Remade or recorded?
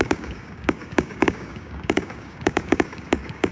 remade